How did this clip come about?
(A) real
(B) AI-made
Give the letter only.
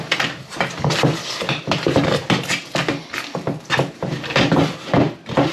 A